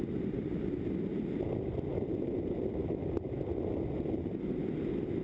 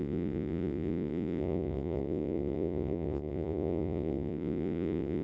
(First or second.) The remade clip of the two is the second